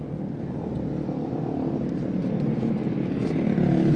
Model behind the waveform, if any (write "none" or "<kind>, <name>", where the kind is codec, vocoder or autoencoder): none